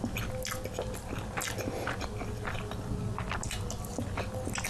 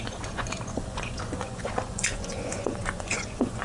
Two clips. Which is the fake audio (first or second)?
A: second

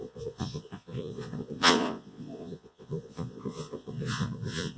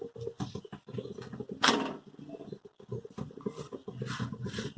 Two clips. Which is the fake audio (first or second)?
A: first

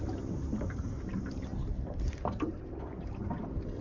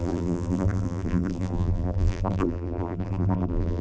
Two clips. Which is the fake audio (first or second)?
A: second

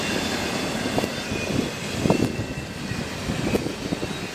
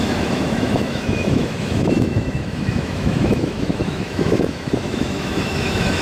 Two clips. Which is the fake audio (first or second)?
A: second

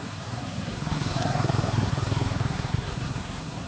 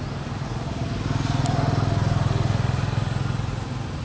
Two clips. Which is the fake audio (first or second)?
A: first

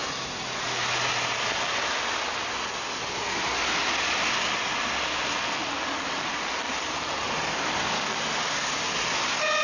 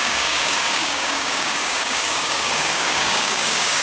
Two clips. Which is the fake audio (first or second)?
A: second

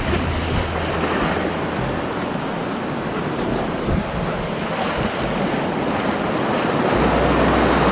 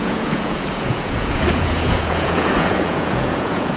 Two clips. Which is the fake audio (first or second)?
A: second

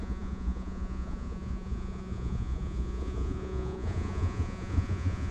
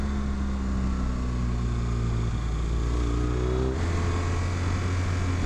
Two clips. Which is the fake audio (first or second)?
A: first